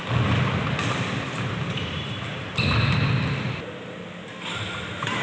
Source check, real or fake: real